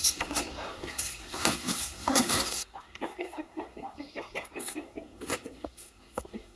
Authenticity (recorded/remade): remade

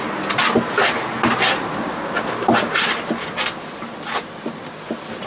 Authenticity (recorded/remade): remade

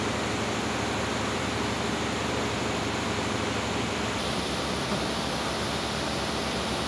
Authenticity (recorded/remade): recorded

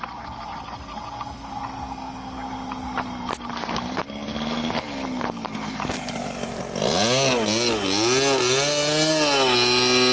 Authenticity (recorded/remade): recorded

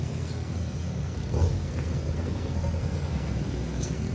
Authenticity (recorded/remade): remade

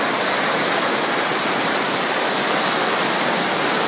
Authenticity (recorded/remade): recorded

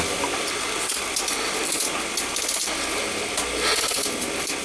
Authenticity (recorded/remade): recorded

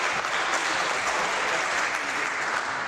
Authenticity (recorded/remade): recorded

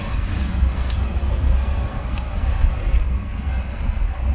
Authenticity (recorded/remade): remade